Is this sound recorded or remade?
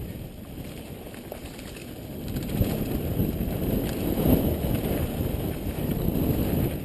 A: recorded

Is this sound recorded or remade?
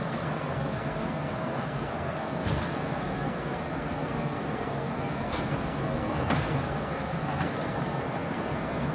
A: remade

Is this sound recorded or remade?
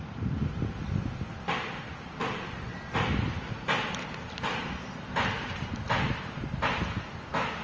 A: recorded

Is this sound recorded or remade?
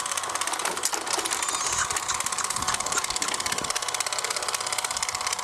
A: recorded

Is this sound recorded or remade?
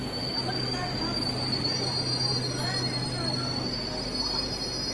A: recorded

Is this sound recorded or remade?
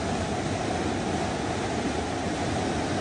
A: recorded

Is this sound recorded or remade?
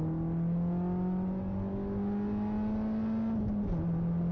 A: recorded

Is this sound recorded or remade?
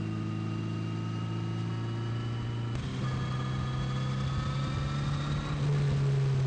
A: recorded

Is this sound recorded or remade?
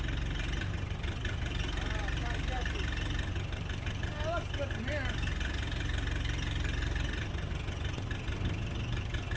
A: recorded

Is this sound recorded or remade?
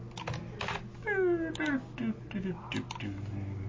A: recorded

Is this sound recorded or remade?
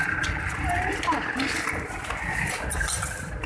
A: recorded